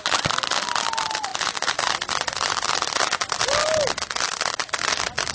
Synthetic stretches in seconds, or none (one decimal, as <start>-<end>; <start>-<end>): none